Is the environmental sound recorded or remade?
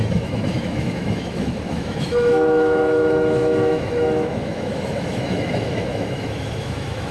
remade